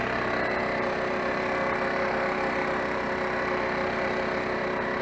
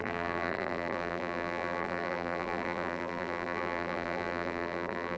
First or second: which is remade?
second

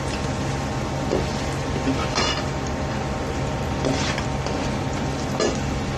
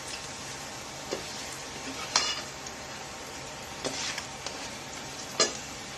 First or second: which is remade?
second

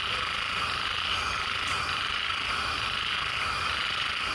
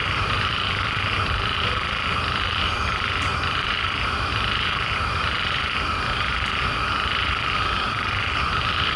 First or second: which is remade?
second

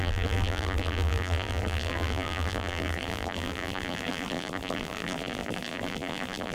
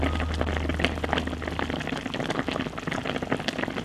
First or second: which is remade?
first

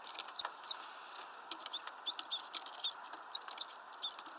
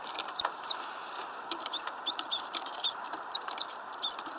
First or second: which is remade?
second